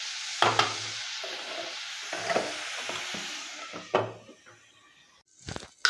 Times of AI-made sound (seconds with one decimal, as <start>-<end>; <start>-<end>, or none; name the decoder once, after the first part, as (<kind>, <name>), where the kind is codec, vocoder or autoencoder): none

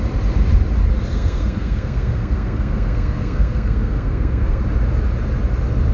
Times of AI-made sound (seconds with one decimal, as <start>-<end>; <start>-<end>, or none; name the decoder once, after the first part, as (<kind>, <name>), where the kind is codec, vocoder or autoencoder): 1.1-4.6 (codec, SNAC)

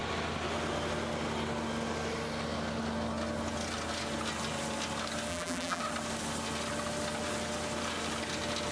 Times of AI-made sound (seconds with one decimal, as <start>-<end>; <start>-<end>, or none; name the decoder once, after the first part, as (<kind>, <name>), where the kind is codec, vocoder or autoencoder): 5.3-5.8 (vocoder, BigVGAN v2)

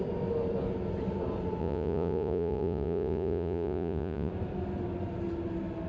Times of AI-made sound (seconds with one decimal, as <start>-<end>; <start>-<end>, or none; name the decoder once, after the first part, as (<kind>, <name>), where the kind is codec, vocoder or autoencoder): 1.6-4.3 (vocoder, Vocos)

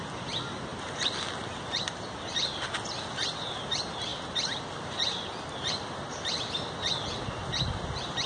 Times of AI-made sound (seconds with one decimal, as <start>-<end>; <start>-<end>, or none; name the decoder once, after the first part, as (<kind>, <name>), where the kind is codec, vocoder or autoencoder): none

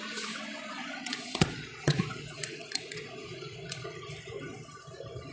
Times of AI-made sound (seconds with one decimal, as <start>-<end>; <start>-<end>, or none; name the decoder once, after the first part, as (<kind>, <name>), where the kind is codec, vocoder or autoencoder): 0.7-3.9 (vocoder, Vocos)

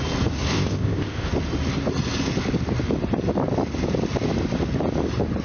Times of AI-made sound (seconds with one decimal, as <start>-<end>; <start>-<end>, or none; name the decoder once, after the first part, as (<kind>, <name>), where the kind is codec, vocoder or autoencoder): 0.5-1.3 (codec, ZipCodec)

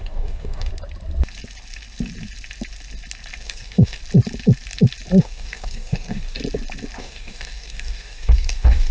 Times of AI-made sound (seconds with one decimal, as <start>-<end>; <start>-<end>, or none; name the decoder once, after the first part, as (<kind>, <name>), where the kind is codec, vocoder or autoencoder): 0.0-0.7 (codec, DAC); 3.4-4.0; 5.2-6.4; 7.0-8.9